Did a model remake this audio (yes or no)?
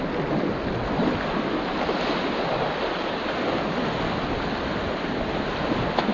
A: no